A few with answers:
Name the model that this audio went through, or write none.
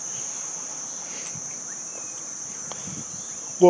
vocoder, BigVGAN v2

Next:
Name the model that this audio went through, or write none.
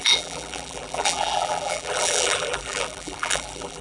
vocoder, BigVGAN v2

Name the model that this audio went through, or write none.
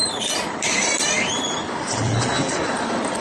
vocoder, BigVGAN v2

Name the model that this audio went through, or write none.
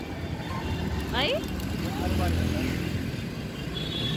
none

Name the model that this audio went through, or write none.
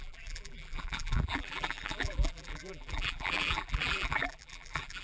vocoder, BigVGAN v2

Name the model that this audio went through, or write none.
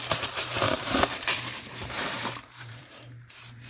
vocoder, BigVGAN v2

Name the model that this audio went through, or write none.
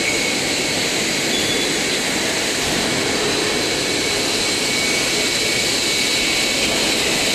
none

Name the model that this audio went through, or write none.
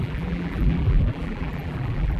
vocoder, BigVGAN v2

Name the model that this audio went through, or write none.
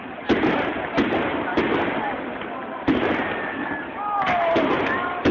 none